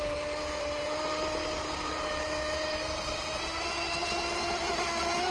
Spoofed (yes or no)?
no